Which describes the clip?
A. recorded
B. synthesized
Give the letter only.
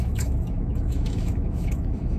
B